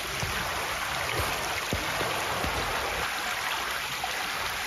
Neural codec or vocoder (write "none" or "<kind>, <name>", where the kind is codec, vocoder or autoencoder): none